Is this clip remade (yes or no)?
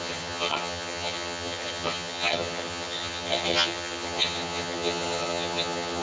yes